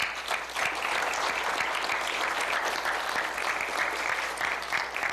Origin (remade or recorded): recorded